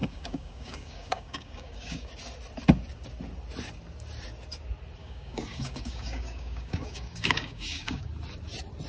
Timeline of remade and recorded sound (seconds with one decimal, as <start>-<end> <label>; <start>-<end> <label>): 0.0-2.1 remade; 2.1-5.0 recorded; 5.0-8.1 remade; 8.1-8.9 recorded